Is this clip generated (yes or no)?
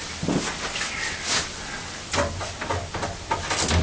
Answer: no